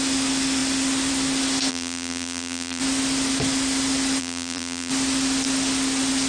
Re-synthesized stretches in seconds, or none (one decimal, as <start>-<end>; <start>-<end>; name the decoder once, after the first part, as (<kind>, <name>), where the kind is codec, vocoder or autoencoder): 1.7-2.8 (vocoder, BigVGAN v2); 4.2-4.9